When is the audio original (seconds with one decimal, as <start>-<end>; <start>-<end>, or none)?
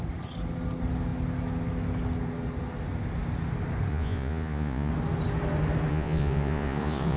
0.0-3.9; 4.9-5.9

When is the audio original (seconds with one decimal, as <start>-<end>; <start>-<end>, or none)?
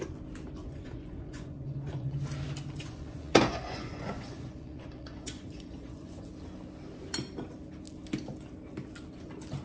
0.0-0.6; 2.2-2.8; 6.3-9.6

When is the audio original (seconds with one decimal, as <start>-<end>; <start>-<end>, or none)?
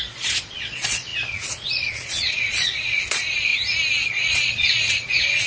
3.5-4.1